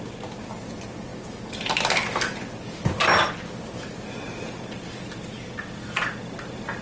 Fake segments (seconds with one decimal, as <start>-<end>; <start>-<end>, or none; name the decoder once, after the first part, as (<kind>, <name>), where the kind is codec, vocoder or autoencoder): none